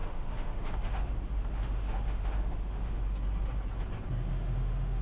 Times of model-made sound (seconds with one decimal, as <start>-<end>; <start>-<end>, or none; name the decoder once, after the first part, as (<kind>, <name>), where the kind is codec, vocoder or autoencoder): 0.0-3.0 (autoencoder, DAC-VAE); 4.3-5.0